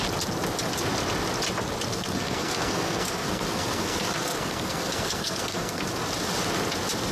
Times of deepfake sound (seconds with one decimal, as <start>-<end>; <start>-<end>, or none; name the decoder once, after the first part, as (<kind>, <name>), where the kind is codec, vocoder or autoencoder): 1.9-5.9 (codec, SNAC)